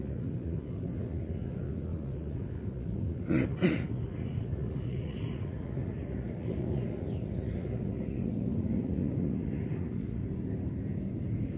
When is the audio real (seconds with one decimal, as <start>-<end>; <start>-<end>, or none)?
10.2-11.6